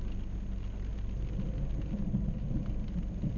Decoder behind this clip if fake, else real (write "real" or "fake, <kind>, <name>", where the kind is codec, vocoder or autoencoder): real